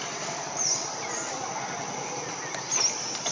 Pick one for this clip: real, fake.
real